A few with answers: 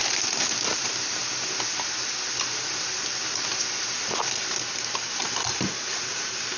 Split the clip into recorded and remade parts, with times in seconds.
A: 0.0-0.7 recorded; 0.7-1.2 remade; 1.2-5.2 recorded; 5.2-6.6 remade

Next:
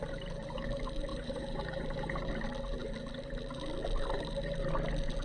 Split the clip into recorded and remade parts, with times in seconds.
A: 0.0-0.7 remade; 0.7-1.1 recorded; 1.1-2.3 remade; 2.3-5.2 recorded